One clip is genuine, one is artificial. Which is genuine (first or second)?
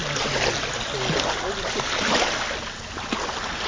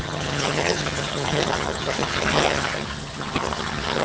first